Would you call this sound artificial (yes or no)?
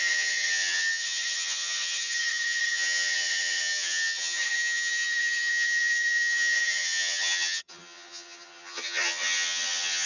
yes